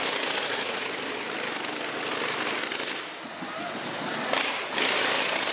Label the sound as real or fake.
real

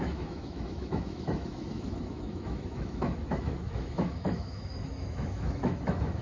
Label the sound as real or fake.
fake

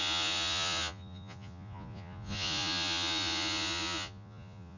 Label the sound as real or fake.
fake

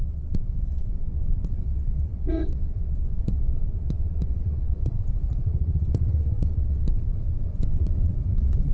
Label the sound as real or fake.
fake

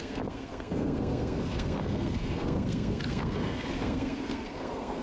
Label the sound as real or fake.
fake